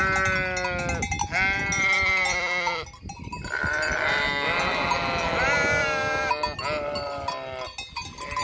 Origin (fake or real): real